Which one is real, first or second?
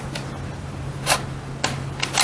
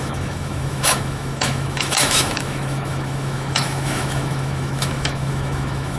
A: first